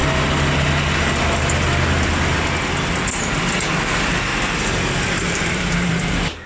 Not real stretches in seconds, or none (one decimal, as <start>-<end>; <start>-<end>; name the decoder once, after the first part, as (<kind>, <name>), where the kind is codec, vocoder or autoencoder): 3.9-4.3 (vocoder, BigVGAN v2); 5.1-6.5